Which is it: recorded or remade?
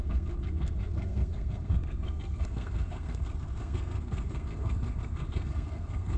remade